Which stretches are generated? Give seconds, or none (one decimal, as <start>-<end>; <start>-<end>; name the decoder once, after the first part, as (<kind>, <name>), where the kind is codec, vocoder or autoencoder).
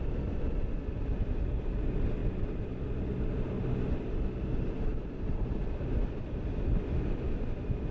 4.9-5.6 (vocoder, BigVGAN v2)